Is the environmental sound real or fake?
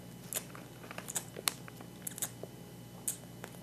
real